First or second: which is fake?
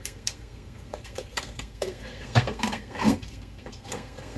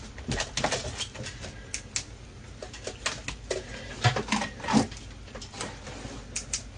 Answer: first